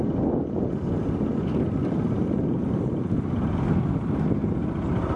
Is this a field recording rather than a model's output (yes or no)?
yes